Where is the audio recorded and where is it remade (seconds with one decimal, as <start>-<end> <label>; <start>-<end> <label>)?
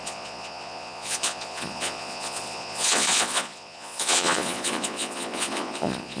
0.0-6.2 remade